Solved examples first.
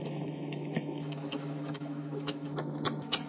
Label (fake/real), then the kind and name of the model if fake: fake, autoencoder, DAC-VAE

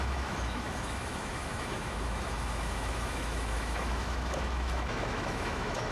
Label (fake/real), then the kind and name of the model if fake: fake, autoencoder, DAC-VAE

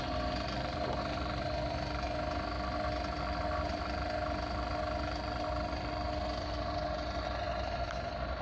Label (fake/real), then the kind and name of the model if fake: real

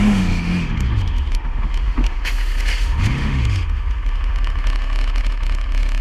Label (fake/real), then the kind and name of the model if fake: fake, autoencoder, DAC-VAE